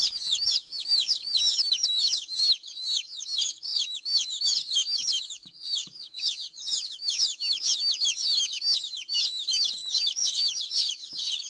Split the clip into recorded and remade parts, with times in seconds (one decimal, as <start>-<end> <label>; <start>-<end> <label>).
0.0-11.5 remade